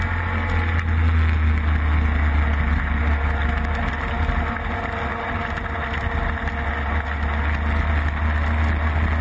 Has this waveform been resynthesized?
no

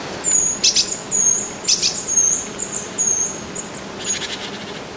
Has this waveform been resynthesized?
no